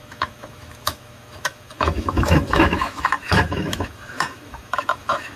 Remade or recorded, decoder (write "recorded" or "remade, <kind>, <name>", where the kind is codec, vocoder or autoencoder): remade, autoencoder, DAC-VAE